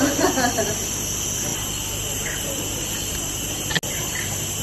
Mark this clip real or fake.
real